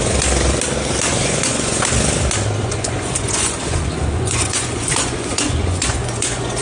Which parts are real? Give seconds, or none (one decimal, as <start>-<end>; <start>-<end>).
0.0-1.1; 1.8-2.6